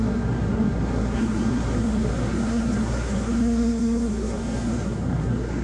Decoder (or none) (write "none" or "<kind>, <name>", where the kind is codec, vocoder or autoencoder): codec, SNAC